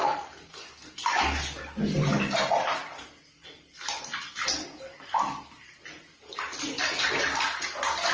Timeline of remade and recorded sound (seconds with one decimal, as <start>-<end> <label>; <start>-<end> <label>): 0.0-6.5 recorded; 6.5-7.2 remade; 7.2-8.1 recorded